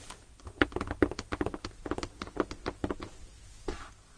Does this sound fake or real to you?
real